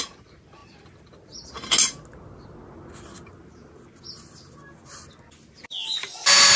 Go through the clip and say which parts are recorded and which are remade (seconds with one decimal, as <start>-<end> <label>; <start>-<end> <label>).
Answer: 0.0-6.6 recorded